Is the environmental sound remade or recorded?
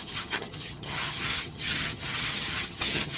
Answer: remade